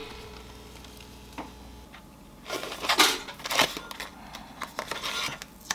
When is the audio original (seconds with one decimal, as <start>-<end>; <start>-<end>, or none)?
0.0-5.7